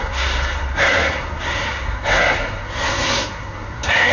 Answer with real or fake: fake